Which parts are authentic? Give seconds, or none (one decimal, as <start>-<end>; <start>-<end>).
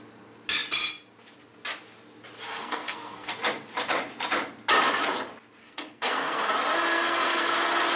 0.0-2.5; 3.3-5.6; 6.5-6.9; 7.5-8.0